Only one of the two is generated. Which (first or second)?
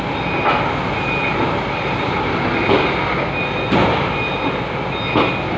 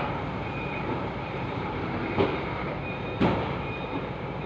second